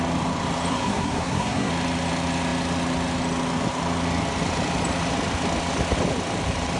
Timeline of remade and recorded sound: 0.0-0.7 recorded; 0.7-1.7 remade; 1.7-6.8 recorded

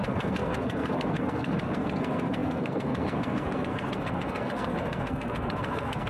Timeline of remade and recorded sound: 0.0-6.1 remade